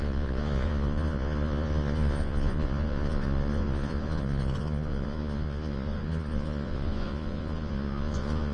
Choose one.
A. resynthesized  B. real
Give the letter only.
A